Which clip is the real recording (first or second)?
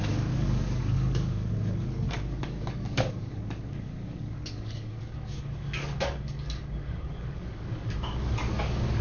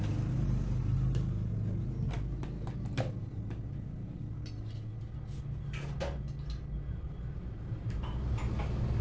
second